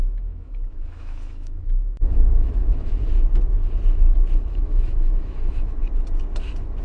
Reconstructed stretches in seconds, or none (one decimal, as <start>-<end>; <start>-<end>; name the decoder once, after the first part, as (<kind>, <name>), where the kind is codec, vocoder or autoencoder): 0.0-2.9 (autoencoder, DAC-VAE); 4.5-5.8